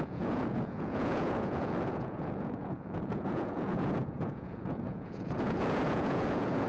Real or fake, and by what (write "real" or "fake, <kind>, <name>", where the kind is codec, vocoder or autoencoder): fake, vocoder, Vocos